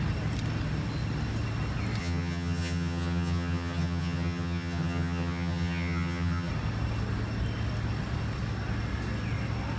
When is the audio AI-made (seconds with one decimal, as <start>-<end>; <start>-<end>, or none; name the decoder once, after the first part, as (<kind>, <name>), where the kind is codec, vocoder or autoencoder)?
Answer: 2.0-6.5 (vocoder, HiFi-GAN)